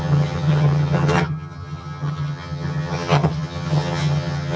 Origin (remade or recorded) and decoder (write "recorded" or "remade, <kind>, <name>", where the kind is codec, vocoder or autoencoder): remade, vocoder, HiFi-GAN